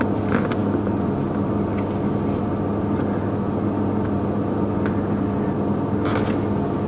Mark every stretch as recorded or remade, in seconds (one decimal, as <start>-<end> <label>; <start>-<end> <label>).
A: 0.0-6.9 recorded